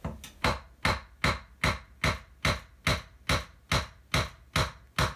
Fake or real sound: real